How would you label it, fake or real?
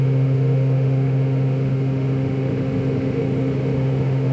fake